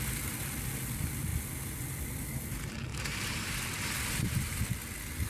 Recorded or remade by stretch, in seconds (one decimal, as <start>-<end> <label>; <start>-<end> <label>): 0.0-2.9 recorded; 2.9-4.6 remade; 4.6-5.3 recorded